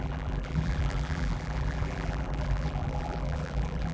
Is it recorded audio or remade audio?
remade